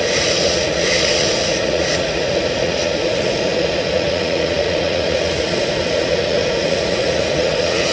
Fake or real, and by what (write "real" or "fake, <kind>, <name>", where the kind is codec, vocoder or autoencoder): fake, vocoder, Vocos